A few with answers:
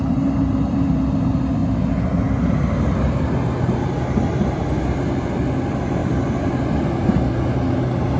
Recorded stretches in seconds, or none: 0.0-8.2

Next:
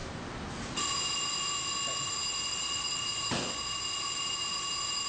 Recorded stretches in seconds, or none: 0.0-2.5; 3.0-5.1

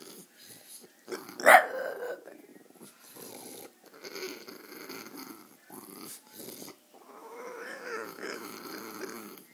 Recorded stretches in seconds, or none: 0.0-7.2; 8.5-9.5

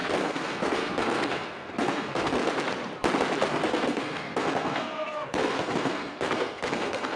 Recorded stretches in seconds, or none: 2.4-3.5

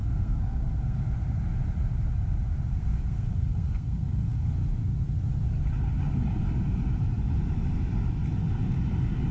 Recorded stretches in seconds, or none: 1.0-2.7; 4.5-9.3

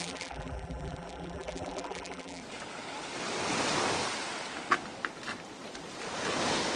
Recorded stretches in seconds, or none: 2.4-6.8

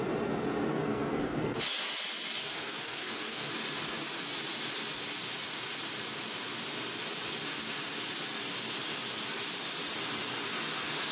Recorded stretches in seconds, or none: 0.0-0.7; 1.6-2.4; 3.5-11.1